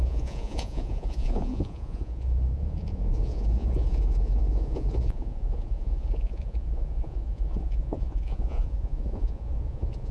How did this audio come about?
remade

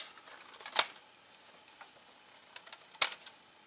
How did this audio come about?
recorded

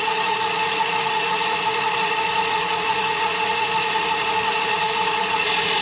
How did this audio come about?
remade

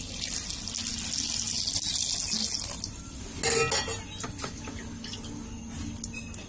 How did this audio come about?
recorded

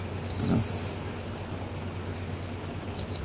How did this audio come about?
recorded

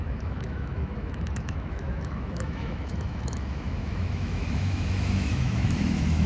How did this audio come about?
remade